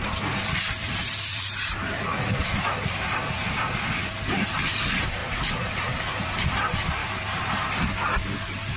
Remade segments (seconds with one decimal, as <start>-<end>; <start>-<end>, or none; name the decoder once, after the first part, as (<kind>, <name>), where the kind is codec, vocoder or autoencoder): 0.8-4.5 (vocoder, BigVGAN v2); 5.2-5.8